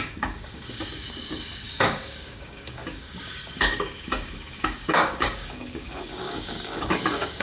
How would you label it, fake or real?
fake